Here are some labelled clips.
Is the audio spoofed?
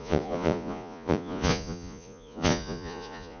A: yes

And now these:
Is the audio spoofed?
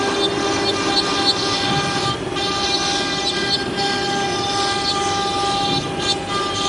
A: no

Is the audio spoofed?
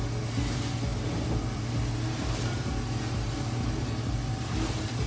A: no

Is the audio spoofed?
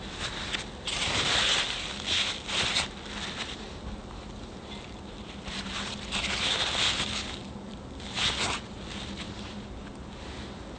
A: no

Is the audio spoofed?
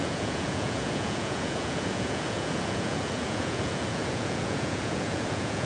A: yes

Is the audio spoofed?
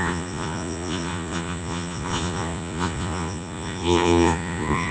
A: yes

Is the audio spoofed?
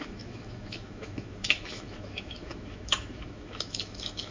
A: yes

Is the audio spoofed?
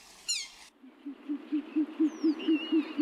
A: no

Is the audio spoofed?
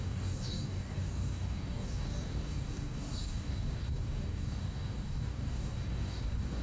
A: yes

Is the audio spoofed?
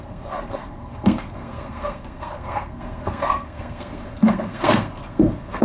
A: yes